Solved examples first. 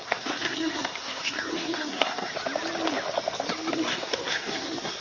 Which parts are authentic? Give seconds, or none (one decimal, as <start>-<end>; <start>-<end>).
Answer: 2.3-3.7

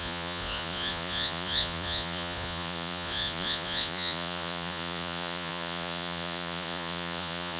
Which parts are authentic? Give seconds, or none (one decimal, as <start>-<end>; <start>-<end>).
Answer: none

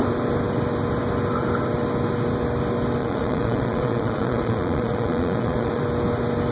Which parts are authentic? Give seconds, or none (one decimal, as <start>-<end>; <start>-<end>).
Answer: 0.0-3.0; 5.8-6.5

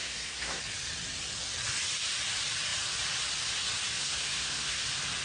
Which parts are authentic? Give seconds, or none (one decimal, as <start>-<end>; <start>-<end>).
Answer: 0.6-4.0; 4.8-5.2

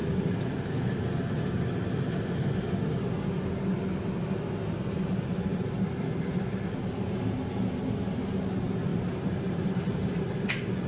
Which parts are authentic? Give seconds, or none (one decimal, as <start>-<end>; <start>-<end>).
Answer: 0.0-8.9; 10.5-10.9

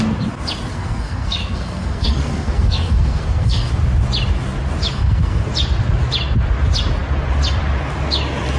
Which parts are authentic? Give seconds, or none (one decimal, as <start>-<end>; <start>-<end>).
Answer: 0.0-0.7; 3.7-4.8; 5.4-8.6

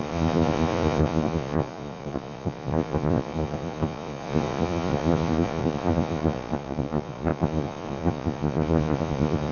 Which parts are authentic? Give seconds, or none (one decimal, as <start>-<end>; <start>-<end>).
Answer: none

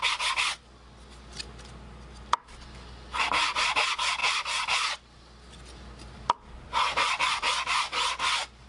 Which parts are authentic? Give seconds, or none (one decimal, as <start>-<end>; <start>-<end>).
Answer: 0.0-8.7